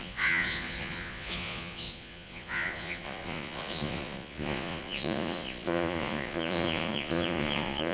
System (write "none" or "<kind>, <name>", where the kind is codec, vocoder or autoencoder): vocoder, Vocos